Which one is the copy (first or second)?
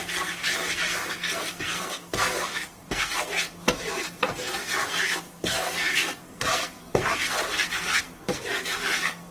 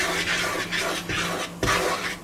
first